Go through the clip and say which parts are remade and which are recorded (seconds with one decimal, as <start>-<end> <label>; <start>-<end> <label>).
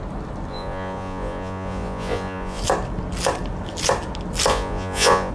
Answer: 0.0-0.5 recorded; 0.5-2.6 remade; 2.6-4.5 recorded; 4.5-5.3 remade